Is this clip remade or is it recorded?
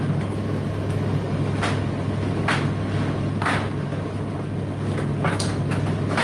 recorded